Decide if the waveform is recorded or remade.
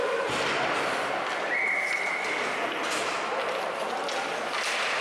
recorded